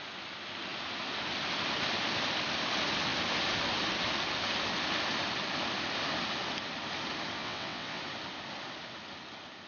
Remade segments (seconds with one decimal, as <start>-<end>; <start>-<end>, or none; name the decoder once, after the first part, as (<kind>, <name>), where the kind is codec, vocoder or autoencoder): 7.4-8.0 (vocoder, WaveNeXt)